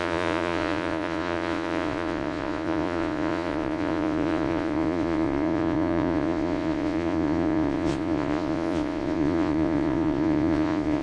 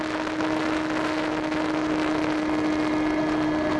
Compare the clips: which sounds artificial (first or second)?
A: first